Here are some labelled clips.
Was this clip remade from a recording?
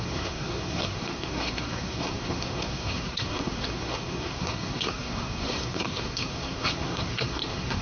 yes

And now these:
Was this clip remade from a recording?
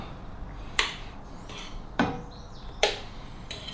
yes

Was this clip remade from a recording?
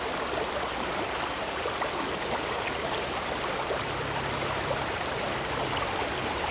yes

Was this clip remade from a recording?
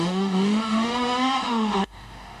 yes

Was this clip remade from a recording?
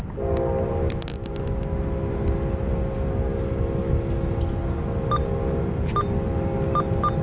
no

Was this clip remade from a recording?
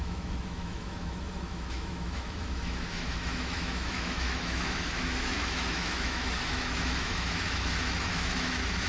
yes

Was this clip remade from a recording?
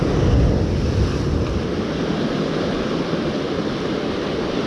no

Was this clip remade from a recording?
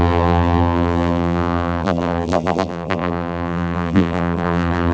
yes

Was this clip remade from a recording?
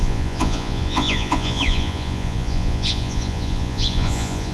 yes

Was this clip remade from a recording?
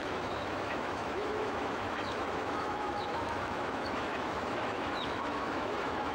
yes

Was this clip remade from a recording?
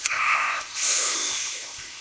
yes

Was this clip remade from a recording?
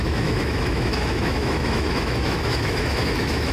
yes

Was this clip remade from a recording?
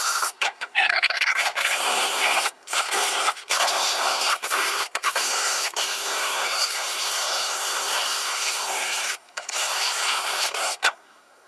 yes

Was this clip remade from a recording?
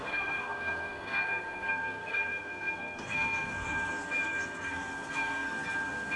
yes